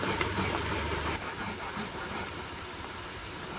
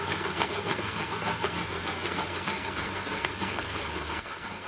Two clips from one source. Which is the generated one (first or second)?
second